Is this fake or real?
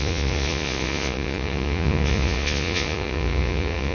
fake